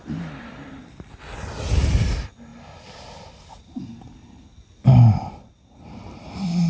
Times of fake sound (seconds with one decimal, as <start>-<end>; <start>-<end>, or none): none